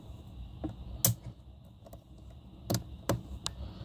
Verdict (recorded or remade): recorded